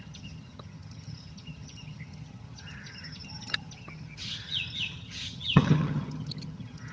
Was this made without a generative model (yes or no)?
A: no